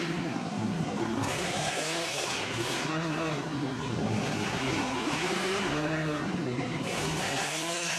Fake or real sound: fake